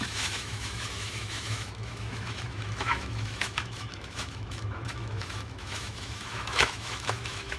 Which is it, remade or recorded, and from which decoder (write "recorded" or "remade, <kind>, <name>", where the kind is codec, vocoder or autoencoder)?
remade, autoencoder, DAC-VAE